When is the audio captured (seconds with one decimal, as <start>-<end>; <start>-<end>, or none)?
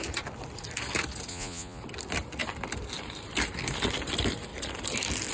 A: 0.0-1.3; 1.8-5.3